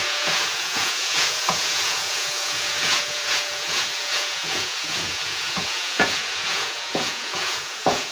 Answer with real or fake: fake